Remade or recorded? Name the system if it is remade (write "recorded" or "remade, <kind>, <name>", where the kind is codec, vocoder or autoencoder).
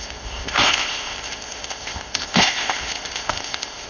remade, codec, ZipCodec